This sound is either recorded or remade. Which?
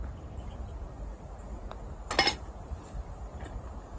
recorded